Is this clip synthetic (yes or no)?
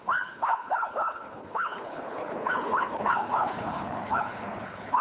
yes